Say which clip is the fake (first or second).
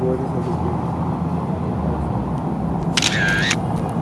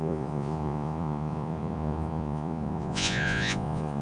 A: second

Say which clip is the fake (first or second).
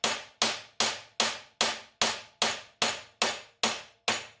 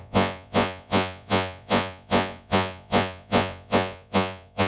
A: second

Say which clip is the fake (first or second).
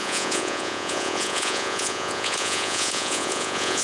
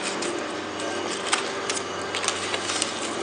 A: first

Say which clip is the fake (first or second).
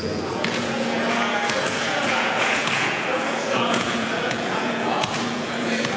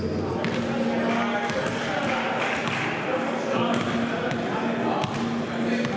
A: first